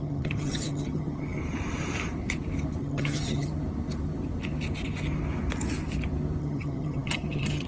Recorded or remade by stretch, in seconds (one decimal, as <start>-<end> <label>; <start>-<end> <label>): 0.0-1.4 remade; 1.4-2.8 recorded; 2.8-3.5 remade; 3.5-6.4 recorded; 6.4-7.7 remade